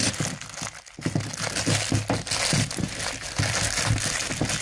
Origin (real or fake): real